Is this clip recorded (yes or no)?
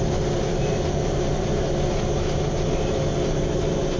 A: yes